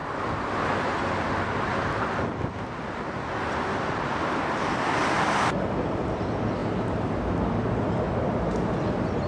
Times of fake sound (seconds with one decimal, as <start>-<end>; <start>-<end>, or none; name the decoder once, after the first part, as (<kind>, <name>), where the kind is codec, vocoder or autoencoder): none